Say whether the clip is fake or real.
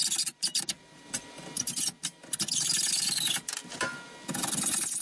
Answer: real